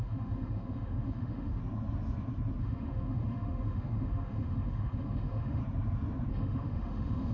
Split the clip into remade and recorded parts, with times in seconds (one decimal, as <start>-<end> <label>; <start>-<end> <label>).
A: 0.0-1.6 remade; 1.6-2.6 recorded; 2.6-5.6 remade; 5.6-6.3 recorded; 6.3-7.3 remade